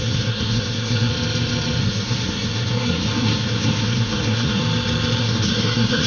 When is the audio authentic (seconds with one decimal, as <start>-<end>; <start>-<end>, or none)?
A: 1.1-1.8; 4.6-5.2